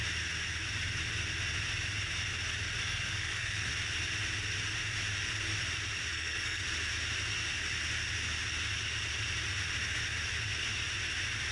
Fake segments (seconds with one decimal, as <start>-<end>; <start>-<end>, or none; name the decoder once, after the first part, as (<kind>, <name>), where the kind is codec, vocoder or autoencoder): 2.8-3.7 (codec, SNAC); 6.1-6.6